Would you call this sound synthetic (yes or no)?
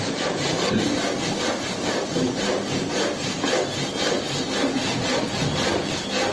no